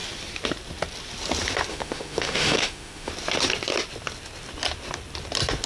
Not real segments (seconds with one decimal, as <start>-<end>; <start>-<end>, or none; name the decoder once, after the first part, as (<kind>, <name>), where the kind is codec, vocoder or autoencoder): 1.7-3.1 (autoencoder, DAC-VAE)